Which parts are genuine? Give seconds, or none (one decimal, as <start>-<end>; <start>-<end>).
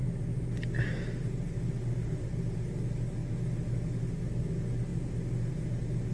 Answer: 0.0-6.1